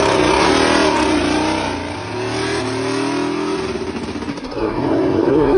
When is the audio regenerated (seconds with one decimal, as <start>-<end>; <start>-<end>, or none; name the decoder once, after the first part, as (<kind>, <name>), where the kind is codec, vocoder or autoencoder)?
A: 4.3-5.6 (codec, SNAC)